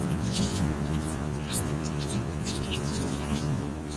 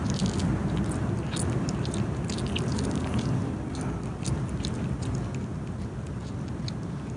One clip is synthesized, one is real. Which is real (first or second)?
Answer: second